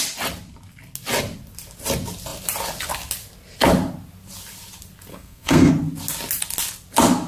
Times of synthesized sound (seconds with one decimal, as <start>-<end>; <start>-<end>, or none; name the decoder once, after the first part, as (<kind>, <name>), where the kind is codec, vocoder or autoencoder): 5.1-5.7 (codec, SNAC)